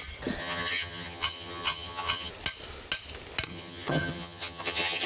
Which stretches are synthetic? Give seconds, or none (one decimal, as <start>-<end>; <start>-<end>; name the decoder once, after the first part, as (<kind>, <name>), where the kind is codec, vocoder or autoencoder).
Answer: 0.4-2.3 (vocoder, HiFi-GAN); 3.5-5.1